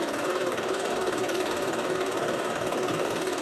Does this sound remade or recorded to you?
remade